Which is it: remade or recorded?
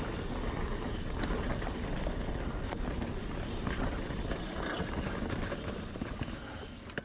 recorded